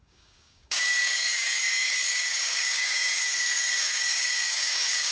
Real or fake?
fake